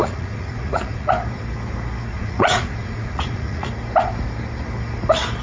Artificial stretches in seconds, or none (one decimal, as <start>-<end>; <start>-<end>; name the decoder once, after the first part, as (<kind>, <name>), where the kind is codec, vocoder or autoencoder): 0.0-1.1 (vocoder, Vocos); 2.1-3.7